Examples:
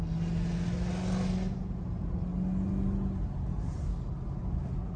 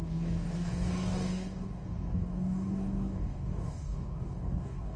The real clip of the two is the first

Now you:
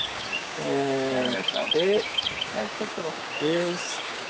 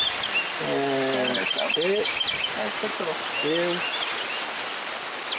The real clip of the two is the second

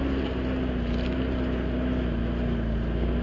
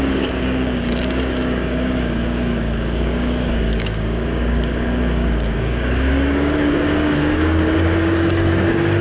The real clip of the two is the first